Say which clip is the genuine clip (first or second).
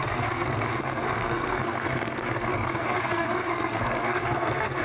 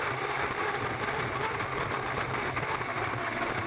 second